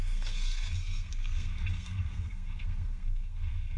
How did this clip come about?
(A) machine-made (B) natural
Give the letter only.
A